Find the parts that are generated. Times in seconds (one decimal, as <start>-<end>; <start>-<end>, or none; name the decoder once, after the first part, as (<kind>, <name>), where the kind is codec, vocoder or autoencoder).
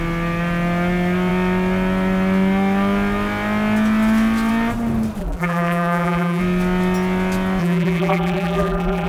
5.2-6.4 (vocoder, BigVGAN v2); 7.6-9.1